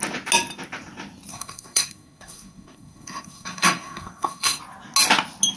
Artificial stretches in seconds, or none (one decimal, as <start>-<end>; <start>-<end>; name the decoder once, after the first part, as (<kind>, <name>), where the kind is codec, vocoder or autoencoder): 1.3-4.6 (codec, SNAC)